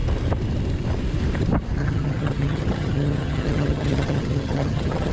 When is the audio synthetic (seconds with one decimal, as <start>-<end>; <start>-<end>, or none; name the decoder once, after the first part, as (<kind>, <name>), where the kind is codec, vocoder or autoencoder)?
1.8-5.1 (vocoder, HiFi-GAN)